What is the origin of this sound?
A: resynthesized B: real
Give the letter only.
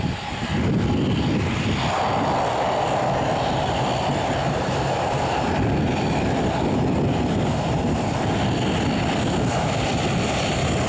B